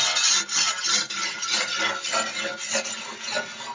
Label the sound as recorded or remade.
recorded